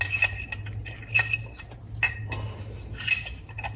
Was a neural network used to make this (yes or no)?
no